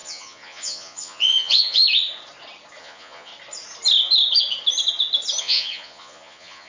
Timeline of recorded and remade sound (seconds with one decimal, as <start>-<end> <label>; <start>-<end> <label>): 0.0-1.8 remade; 1.8-2.8 recorded; 2.8-3.3 remade; 3.3-5.4 recorded; 5.4-6.7 remade